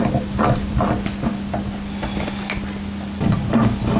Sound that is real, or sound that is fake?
real